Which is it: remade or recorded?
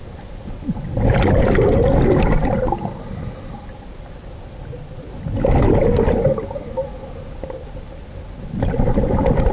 recorded